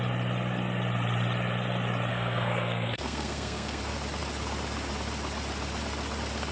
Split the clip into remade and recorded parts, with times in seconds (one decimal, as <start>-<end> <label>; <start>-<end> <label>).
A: 0.0-2.1 recorded; 2.1-3.8 remade; 3.8-6.5 recorded